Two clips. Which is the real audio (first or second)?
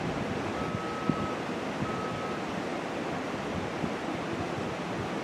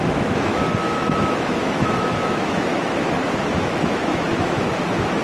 first